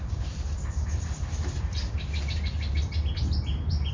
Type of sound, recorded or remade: recorded